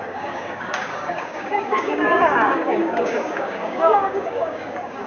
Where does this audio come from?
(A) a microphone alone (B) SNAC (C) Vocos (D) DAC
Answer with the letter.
D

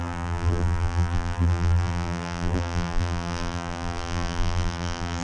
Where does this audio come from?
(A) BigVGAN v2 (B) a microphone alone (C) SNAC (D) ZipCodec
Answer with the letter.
A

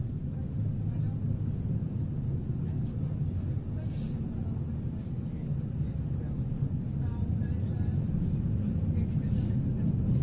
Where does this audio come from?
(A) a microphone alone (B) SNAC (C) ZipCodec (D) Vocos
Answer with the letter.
A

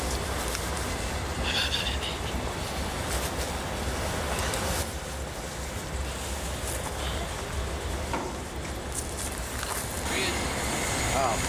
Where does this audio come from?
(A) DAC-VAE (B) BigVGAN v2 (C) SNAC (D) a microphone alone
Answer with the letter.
D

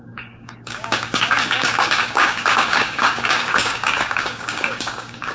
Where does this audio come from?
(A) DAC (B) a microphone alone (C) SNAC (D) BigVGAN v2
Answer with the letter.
A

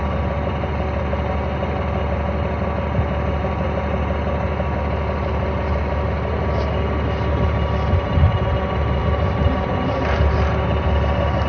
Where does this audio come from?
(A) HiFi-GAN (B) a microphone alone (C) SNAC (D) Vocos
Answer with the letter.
B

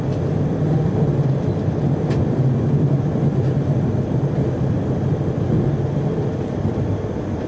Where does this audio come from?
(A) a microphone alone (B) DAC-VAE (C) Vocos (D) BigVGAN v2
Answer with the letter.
D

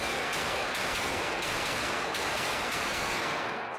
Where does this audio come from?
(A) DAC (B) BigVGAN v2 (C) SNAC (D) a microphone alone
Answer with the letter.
C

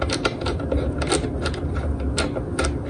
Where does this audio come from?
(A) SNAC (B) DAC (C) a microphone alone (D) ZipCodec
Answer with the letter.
C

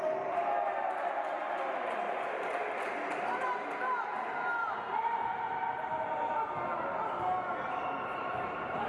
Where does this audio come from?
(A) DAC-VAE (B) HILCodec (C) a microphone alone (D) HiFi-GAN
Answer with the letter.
C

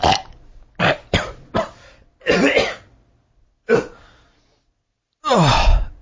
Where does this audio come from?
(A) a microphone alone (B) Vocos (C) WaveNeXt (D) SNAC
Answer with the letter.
A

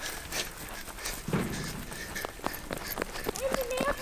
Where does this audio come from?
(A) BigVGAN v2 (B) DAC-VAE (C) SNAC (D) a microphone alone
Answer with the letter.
D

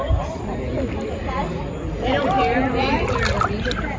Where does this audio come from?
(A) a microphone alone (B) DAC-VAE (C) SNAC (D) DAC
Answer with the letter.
A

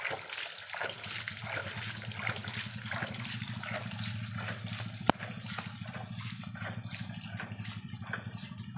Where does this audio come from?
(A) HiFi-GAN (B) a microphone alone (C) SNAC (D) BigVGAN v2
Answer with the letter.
B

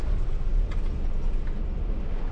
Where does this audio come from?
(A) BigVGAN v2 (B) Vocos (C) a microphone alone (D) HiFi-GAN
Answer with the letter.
C